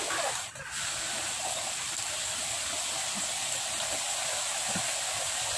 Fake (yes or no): no